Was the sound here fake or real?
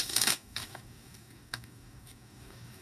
fake